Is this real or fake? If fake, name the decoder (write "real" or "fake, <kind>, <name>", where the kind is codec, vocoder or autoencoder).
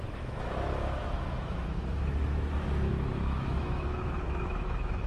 fake, autoencoder, DAC-VAE